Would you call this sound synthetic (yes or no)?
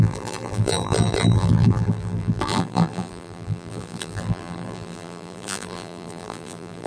yes